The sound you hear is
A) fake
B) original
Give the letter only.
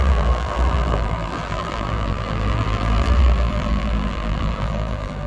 A